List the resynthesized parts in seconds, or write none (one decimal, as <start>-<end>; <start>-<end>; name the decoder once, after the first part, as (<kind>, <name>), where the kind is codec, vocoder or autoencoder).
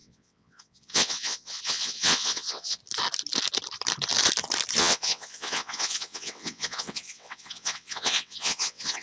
0.0-2.8 (vocoder, WaveNeXt); 4.8-9.0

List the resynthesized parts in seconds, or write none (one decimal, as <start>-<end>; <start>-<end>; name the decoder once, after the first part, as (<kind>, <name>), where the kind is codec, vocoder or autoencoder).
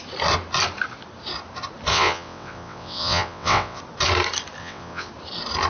1.9-3.8 (vocoder, WaveNeXt); 4.6-5.1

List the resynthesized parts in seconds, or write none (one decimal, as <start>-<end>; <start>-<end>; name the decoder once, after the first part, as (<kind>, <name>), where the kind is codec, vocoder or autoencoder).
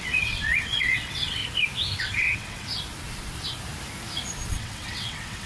0.0-1.4 (vocoder, WaveNeXt); 2.0-2.7; 4.5-5.5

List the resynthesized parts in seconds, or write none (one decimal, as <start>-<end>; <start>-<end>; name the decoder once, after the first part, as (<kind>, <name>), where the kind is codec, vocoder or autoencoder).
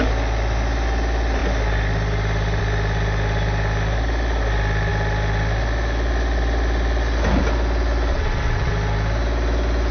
8.1-8.7 (vocoder, WaveNeXt)